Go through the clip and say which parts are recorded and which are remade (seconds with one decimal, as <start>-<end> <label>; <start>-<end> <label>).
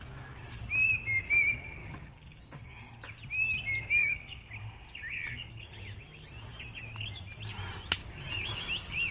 0.0-1.8 recorded; 1.8-2.9 remade; 2.9-4.0 recorded; 4.0-4.5 remade; 4.5-8.0 recorded; 8.0-8.6 remade; 8.6-9.1 recorded